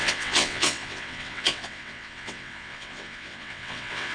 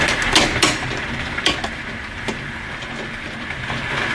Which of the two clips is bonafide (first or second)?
second